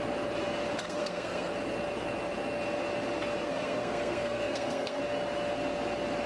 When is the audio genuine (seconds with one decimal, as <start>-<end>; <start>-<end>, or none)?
0.0-0.8; 1.5-3.4; 5.0-6.3